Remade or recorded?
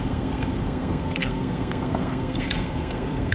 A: remade